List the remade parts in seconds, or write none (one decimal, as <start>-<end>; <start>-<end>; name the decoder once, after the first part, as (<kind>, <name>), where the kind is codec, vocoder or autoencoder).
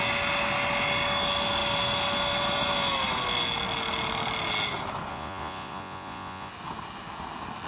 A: 5.1-6.5 (vocoder, Vocos)